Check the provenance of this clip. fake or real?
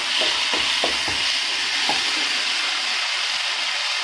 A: real